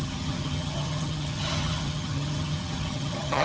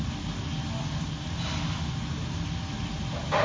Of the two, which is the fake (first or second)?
first